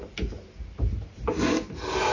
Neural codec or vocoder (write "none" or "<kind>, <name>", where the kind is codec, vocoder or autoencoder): none